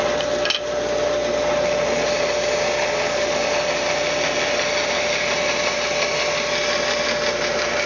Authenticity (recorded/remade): recorded